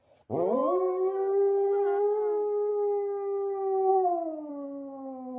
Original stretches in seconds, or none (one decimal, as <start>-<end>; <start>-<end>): 0.0-3.9; 4.5-5.4